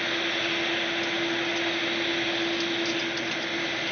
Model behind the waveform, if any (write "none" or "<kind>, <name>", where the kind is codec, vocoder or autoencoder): none